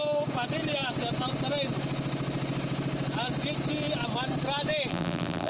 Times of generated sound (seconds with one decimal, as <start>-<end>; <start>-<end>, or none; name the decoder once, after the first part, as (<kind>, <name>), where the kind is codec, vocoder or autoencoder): 4.9-5.5 (vocoder, BigVGAN v2)